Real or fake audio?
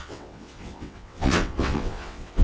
fake